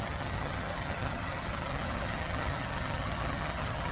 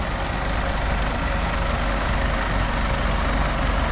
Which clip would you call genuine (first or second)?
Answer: second